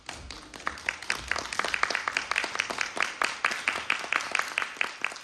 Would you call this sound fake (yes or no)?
no